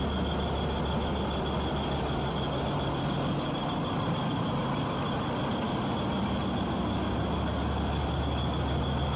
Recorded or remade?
recorded